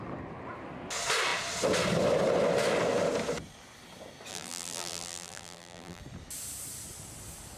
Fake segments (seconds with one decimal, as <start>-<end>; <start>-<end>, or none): 4.3-6.0